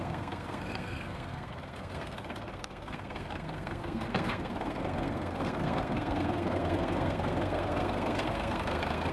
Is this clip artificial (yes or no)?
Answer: yes